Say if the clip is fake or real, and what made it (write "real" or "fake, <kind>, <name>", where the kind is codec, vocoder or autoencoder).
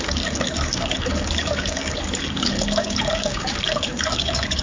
fake, codec, DAC